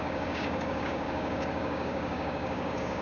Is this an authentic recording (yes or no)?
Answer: no